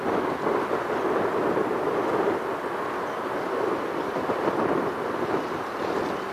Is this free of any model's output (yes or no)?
yes